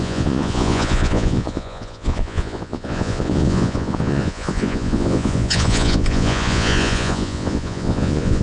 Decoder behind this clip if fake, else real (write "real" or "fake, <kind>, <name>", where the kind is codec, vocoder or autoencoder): fake, vocoder, Vocos